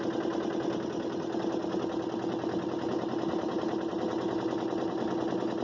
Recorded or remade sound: recorded